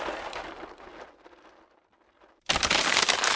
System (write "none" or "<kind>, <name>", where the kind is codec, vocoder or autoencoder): none